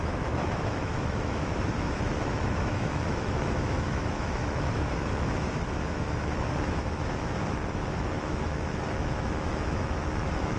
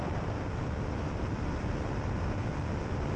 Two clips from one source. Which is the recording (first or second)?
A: second